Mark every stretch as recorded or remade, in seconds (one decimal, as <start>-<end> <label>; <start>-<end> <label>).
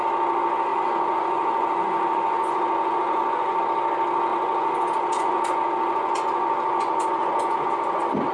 0.0-0.7 recorded; 0.7-3.6 remade; 3.6-4.3 recorded; 4.3-7.7 remade; 7.7-8.3 recorded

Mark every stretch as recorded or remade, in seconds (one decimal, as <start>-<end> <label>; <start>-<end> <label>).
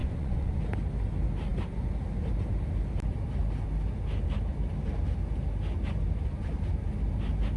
0.0-0.6 remade; 0.6-7.6 recorded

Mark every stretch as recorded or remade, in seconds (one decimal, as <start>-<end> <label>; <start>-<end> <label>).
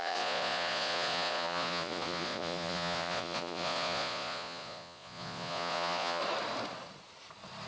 0.0-6.2 remade; 6.2-7.7 recorded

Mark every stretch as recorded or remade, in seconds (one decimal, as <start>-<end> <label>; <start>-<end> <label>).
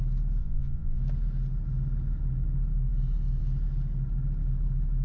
0.0-0.4 recorded; 0.4-1.0 remade; 1.0-5.0 recorded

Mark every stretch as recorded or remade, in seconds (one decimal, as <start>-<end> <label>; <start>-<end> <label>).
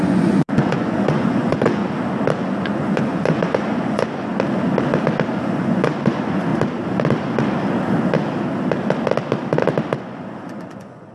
0.0-1.8 remade; 1.8-2.6 recorded; 2.6-4.3 remade; 4.3-5.4 recorded; 5.4-6.5 remade; 6.5-10.0 recorded; 10.0-11.1 remade